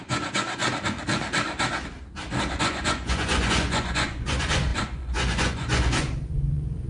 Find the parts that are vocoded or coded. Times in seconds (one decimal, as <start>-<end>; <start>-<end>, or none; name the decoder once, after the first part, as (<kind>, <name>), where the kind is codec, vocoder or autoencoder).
0.0-0.6 (vocoder, Vocos); 2.6-6.9